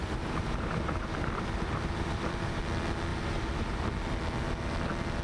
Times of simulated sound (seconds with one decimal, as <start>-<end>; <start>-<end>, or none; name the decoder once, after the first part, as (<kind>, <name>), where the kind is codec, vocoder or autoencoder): 0.0-2.6 (vocoder, BigVGAN v2); 3.1-3.8

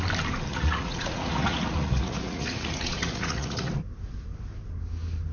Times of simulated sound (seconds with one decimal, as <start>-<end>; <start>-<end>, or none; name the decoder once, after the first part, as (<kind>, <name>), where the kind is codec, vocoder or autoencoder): 0.5-3.7 (vocoder, Vocos)

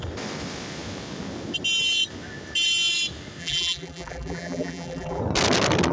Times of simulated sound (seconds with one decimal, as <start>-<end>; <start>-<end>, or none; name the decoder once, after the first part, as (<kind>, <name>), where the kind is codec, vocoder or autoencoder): 3.4-5.2 (vocoder, BigVGAN v2)

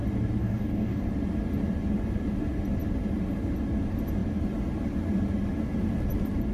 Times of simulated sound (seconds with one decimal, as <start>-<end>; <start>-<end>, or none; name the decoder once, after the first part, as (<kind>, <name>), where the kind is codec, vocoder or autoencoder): 0.4-1.1 (codec, DAC)

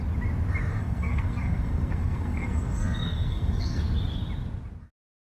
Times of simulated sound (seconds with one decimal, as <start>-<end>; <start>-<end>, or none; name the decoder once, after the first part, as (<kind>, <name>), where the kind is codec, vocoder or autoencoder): 0.7-3.8 (codec, SNAC)